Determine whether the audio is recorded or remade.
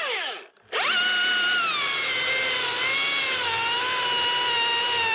recorded